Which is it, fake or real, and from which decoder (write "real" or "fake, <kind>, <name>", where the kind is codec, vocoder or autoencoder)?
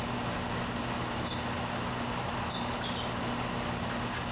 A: real